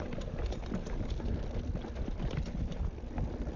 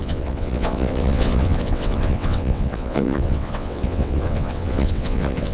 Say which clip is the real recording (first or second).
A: first